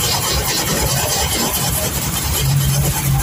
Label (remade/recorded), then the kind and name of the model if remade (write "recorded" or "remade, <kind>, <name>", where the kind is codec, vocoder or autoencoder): remade, vocoder, BigVGAN v2